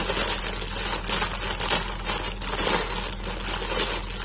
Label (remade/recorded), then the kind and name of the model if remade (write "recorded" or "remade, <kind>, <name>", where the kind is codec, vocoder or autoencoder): recorded